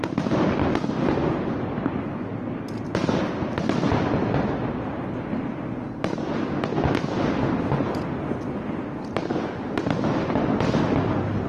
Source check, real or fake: real